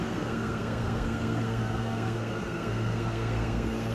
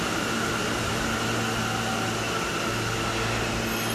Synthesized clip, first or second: first